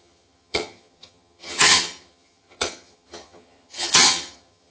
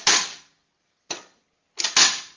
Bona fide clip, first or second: second